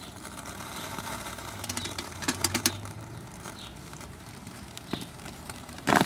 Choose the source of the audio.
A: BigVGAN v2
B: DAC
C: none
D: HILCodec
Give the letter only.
A